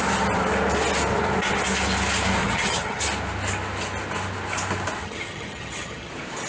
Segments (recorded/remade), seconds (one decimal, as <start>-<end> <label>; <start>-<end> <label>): 0.0-2.4 recorded; 2.4-3.0 remade; 3.0-5.0 recorded; 5.0-6.1 remade; 6.1-6.5 recorded